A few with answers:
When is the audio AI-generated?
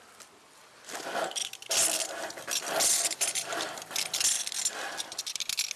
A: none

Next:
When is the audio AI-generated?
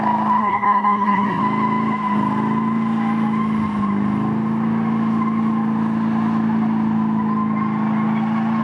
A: 0.4-1.4 (codec, SNAC)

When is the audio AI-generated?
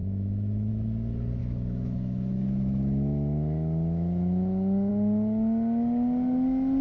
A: 0.0-0.7 (autoencoder, DAC-VAE); 1.4-4.9